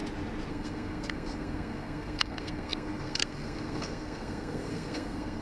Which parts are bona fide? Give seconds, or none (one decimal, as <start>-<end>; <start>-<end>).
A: 0.0-0.5